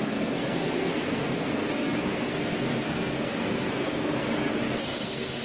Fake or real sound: fake